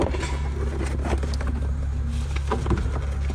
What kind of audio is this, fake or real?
real